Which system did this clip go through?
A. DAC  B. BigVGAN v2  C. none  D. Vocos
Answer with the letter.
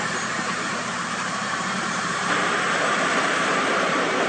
B